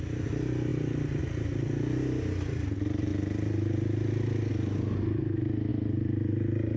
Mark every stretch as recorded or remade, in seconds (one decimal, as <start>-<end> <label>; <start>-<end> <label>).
0.0-6.8 recorded